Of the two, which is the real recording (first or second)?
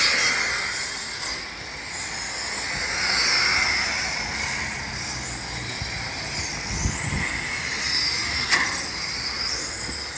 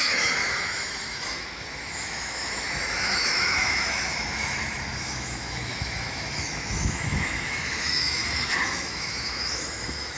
first